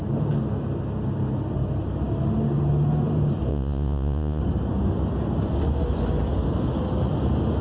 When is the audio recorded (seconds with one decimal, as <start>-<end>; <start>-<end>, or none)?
0.0-3.5; 4.4-7.6